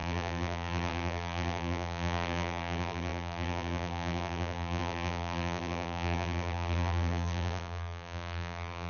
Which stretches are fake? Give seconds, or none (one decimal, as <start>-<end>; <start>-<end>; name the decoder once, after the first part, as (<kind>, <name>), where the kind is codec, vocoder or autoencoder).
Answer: 0.0-8.9 (vocoder, BigVGAN v2)